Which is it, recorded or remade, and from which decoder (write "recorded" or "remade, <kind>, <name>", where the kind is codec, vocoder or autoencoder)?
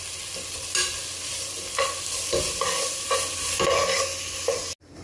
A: recorded